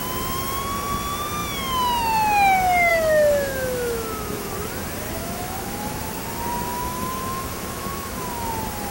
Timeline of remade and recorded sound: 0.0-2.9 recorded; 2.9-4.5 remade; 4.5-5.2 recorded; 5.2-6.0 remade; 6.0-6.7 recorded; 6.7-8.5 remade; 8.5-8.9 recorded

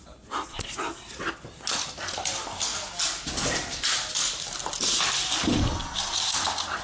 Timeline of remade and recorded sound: 0.0-6.8 recorded

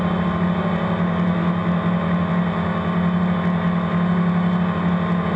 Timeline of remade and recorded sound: 0.0-5.4 recorded